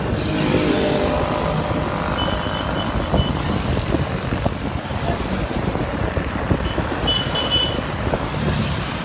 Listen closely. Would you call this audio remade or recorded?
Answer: recorded